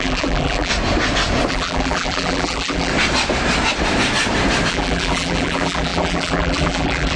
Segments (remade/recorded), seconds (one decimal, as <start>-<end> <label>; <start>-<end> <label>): 0.0-0.7 remade; 0.7-1.5 recorded; 1.5-2.9 remade; 2.9-4.7 recorded; 4.7-7.2 remade